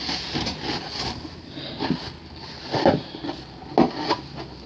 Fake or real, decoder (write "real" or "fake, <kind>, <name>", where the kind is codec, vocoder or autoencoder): real